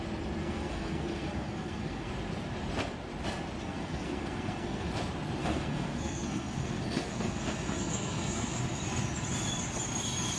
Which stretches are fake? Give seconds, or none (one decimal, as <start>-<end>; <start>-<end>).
0.4-2.1; 3.6-4.9; 5.4-8.6